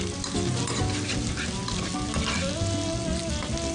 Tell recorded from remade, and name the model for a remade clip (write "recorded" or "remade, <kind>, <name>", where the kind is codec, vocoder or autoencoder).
recorded